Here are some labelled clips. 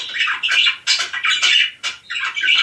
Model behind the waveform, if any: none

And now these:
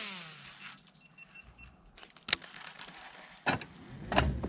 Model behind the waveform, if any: none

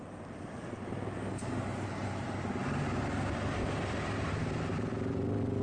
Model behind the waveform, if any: none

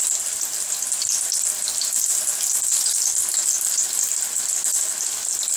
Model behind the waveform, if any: none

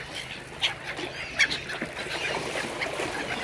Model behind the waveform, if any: none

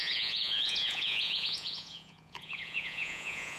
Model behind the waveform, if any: vocoder, Vocos